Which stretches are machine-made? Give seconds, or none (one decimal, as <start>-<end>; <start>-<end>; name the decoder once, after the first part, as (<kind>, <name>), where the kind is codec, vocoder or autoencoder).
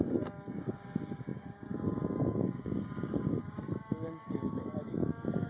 0.0-5.5 (codec, DAC)